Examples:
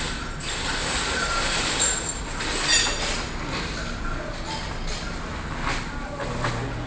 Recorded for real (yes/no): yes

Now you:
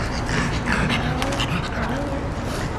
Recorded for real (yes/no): yes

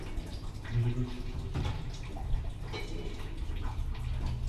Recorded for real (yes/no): yes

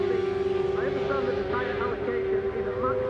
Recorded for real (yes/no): yes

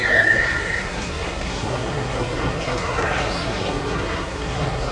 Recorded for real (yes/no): no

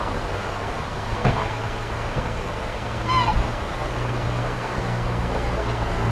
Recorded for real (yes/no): no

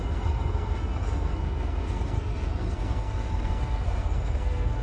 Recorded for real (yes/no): no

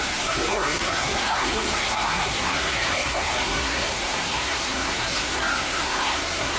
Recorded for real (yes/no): no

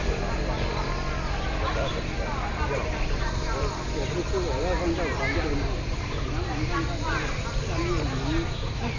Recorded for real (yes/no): yes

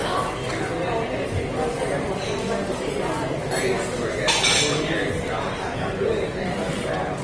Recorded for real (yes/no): yes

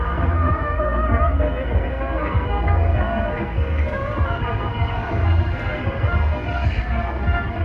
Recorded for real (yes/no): no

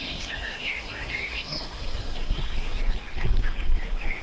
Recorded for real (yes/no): no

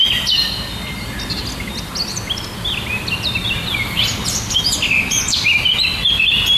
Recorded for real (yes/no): yes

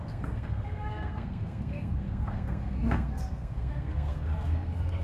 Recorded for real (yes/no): no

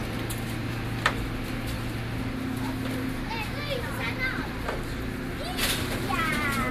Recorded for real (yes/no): yes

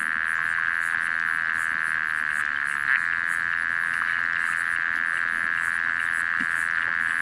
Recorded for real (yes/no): yes